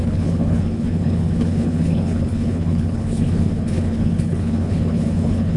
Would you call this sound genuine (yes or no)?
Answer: no